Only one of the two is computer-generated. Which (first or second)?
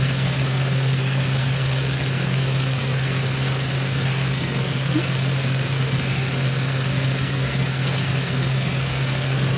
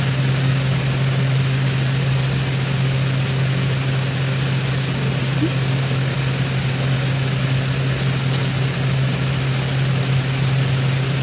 first